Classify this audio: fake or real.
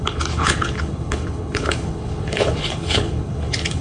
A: fake